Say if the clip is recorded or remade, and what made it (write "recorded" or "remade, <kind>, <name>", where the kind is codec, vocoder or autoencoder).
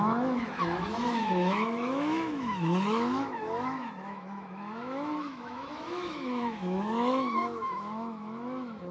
remade, autoencoder, DAC-VAE